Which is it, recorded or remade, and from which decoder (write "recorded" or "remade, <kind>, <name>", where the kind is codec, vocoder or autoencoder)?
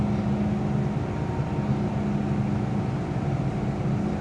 recorded